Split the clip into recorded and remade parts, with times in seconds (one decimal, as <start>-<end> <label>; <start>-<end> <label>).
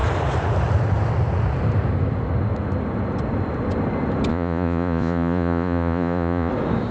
0.0-4.3 recorded; 4.3-6.5 remade; 6.5-6.9 recorded